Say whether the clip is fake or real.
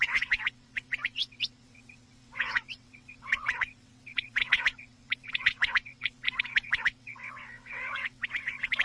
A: fake